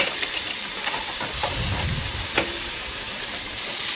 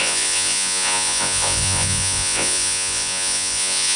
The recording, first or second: first